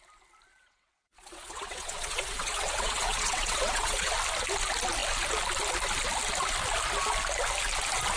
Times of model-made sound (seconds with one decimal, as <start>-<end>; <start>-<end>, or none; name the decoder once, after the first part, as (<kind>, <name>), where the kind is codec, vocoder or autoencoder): 0.5-4.1 (vocoder, WaveNeXt)